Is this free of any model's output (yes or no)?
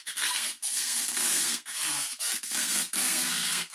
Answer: no